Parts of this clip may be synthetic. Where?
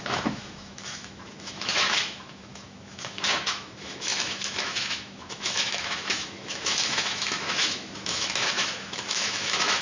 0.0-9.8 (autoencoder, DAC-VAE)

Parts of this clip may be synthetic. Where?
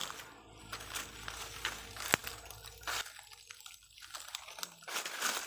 none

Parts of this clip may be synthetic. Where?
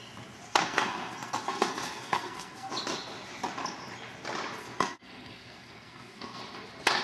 0.5-2.7 (codec, SNAC); 4.6-6.4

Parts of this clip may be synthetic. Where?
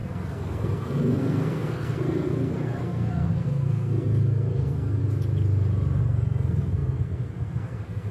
0.0-5.0 (codec, SNAC); 6.0-8.1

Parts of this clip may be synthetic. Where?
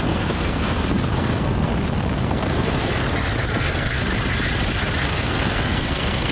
0.0-1.7 (codec, SNAC); 2.2-2.9; 3.5-4.0; 5.0-6.3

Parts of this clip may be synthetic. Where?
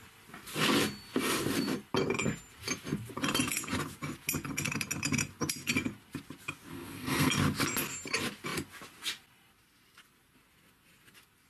6.7-7.3 (codec, SNAC)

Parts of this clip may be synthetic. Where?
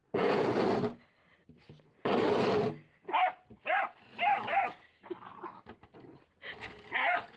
0.0-0.5 (vocoder, Vocos)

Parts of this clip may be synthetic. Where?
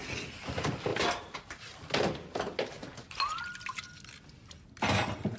none